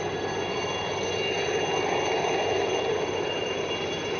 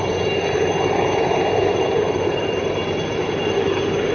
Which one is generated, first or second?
second